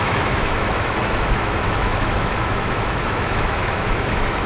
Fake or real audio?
fake